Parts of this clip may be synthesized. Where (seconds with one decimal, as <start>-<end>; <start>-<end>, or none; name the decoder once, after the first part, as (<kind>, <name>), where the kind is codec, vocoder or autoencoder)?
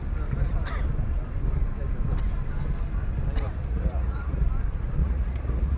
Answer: 3.7-4.4 (vocoder, Vocos); 5.0-5.8